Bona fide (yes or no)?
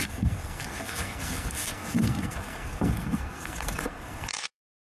no